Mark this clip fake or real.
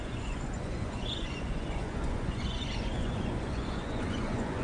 fake